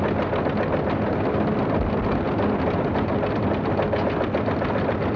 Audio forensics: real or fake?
real